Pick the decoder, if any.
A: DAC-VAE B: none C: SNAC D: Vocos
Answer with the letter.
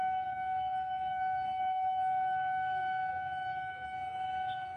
A